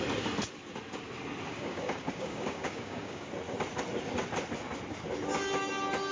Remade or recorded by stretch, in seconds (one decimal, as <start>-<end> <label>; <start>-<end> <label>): 0.0-1.5 recorded; 1.5-3.3 remade; 3.3-6.1 recorded